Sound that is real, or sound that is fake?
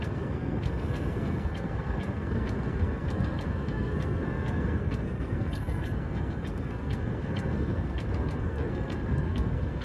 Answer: fake